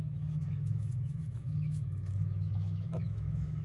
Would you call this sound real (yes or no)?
no